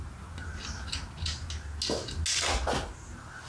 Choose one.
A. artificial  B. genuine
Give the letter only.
B